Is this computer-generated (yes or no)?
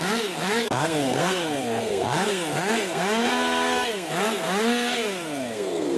yes